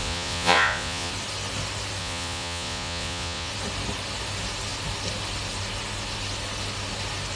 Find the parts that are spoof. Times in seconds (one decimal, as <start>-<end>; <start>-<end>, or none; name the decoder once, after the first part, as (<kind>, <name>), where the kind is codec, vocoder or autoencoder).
0.0-1.1 (vocoder, Vocos); 2.0-3.5